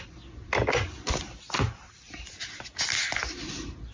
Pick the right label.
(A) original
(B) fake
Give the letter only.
A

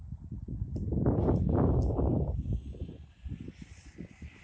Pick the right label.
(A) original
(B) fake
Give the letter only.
A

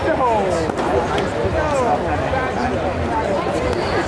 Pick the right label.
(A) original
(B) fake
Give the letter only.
A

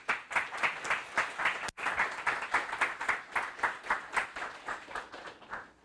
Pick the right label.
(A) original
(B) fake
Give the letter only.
A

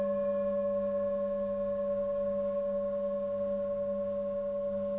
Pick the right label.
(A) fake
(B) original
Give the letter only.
A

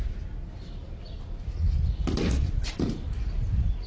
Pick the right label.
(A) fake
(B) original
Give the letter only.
B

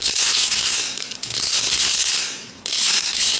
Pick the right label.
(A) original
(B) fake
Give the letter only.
B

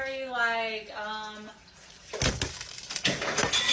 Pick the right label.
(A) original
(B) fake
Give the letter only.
A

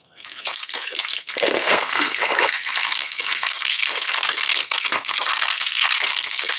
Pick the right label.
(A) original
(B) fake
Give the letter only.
B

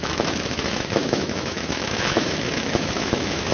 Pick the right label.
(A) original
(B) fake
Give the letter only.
B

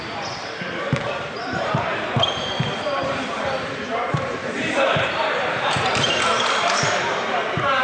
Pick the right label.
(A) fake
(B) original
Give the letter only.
A